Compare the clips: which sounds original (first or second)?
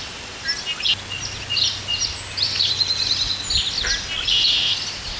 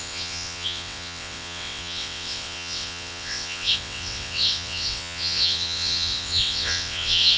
first